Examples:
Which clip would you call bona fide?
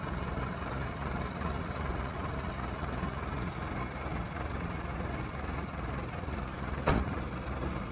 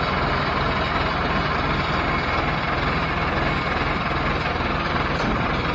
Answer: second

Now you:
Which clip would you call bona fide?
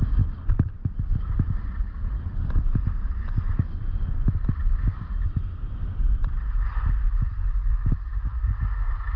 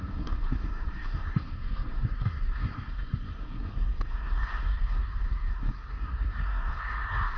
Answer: first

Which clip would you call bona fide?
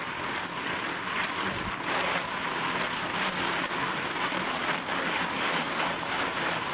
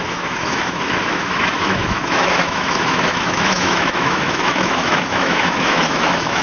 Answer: first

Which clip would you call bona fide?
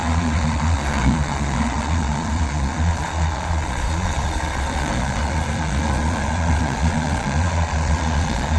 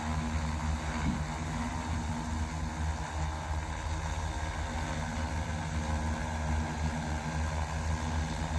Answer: second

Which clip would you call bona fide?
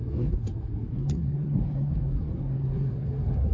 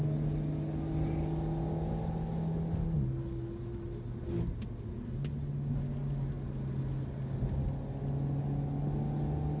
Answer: second